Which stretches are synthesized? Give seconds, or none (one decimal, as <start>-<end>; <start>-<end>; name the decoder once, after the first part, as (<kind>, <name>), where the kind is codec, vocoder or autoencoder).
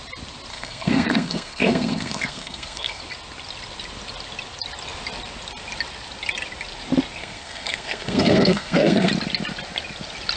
0.5-3.0 (codec, SNAC); 7.2-9.1